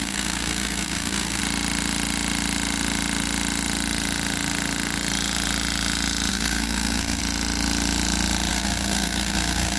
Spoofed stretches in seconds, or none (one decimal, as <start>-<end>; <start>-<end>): 0.0-1.4; 6.3-7.2; 8.5-9.8